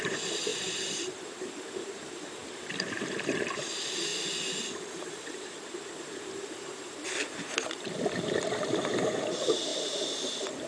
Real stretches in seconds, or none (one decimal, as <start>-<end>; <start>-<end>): 4.1-4.9